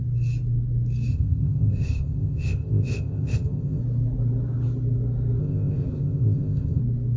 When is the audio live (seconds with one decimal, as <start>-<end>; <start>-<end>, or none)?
0.0-1.1; 3.8-5.4; 6.8-7.2